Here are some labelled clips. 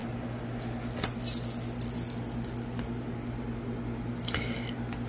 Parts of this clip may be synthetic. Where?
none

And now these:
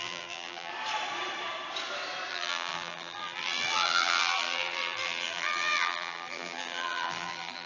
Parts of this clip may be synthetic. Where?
0.0-0.7 (vocoder, BigVGAN v2); 2.3-7.7

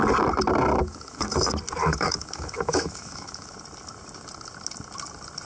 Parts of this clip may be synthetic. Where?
0.8-1.4 (autoencoder, DAC-VAE); 1.8-3.5

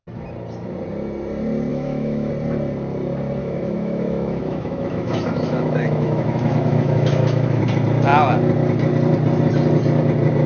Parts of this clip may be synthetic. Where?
1.7-2.3 (autoencoder, DAC-VAE); 3.4-7.6

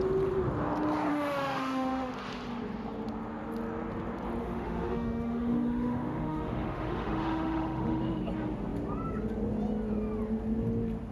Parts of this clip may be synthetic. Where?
1.1-2.1 (autoencoder, DAC-VAE); 4.4-8.0

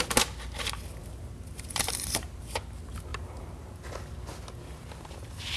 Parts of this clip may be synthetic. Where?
1.0-2.4 (vocoder, BigVGAN v2); 3.1-3.7

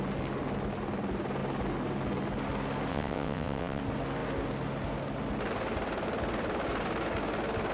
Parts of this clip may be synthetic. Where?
2.9-3.8 (vocoder, WaveNeXt)

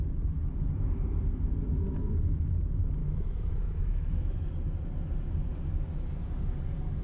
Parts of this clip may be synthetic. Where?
3.0-4.5 (autoencoder, DAC-VAE)